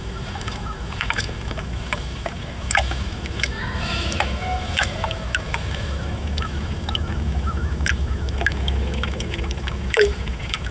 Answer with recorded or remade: remade